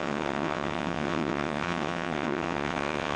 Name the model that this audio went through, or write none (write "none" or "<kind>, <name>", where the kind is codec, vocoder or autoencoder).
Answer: vocoder, WaveNeXt